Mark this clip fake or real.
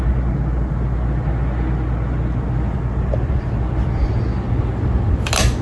real